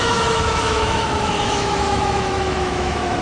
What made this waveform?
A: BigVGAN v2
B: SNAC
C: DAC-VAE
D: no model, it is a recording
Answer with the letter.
C